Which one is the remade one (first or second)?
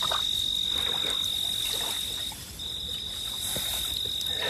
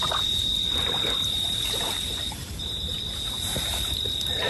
second